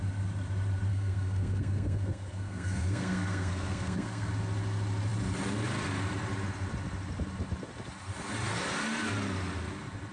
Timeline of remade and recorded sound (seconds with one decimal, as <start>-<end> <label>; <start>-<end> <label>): 0.0-0.9 recorded; 0.9-4.3 remade; 4.3-10.1 recorded